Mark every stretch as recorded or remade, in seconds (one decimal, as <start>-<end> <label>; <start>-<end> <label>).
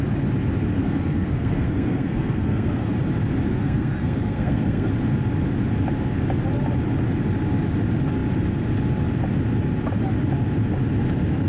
0.0-0.8 recorded; 0.8-2.9 remade; 2.9-3.5 recorded; 3.5-4.9 remade; 4.9-11.5 recorded